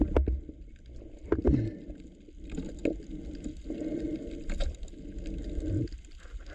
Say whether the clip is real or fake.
real